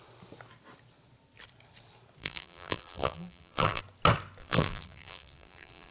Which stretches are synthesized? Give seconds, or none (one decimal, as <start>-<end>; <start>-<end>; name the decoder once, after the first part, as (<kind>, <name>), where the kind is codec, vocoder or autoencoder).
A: 2.2-3.8 (vocoder, BigVGAN v2); 4.4-5.9